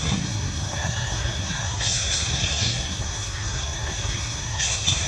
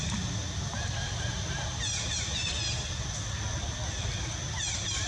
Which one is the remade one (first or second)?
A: first